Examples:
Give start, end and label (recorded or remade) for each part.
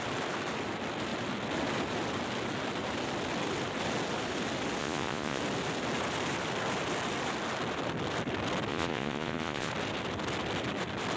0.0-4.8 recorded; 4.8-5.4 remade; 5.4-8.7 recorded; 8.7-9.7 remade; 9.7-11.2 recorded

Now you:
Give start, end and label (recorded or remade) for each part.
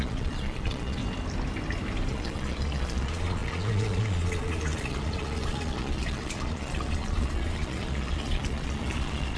0.0-1.0 remade; 1.0-2.1 recorded; 2.1-9.4 remade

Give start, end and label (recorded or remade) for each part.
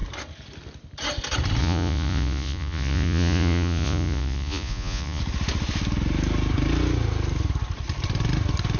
0.0-1.6 recorded; 1.6-5.2 remade; 5.2-8.8 recorded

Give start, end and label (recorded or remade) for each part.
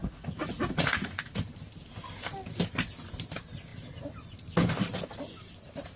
0.0-1.2 remade; 1.2-6.0 recorded